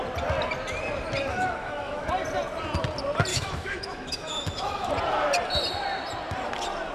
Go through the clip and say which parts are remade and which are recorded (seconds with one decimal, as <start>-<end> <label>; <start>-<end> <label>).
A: 0.0-1.3 recorded; 1.3-2.1 remade; 2.1-3.3 recorded; 3.3-4.9 remade; 4.9-6.9 recorded